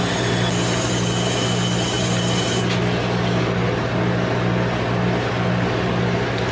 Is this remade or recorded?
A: recorded